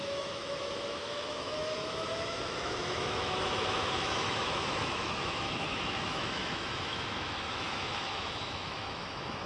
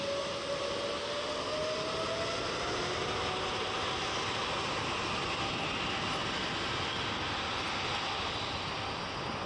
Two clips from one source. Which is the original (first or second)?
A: second